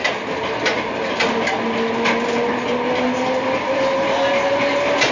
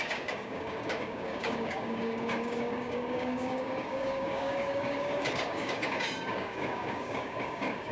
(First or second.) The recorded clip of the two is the first